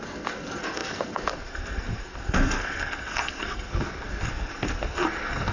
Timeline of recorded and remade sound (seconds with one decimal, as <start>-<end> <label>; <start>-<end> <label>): 0.0-5.5 remade